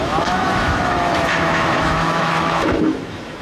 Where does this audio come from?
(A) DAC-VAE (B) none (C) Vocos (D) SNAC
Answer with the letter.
A